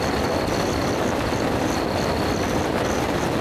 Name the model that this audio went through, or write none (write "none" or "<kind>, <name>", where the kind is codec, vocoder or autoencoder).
none